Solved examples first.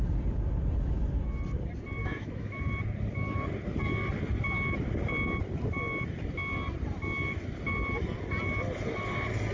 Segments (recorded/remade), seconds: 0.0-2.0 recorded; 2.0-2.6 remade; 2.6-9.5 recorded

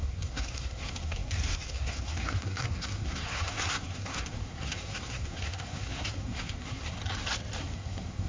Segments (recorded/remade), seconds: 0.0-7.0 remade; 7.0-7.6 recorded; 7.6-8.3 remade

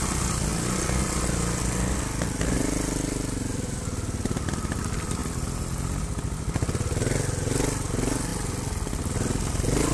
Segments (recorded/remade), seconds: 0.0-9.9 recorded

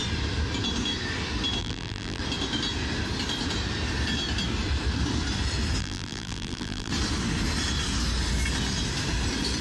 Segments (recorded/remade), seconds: 0.0-1.6 recorded; 1.6-2.2 remade; 2.2-5.8 recorded; 5.8-6.9 remade; 6.9-9.6 recorded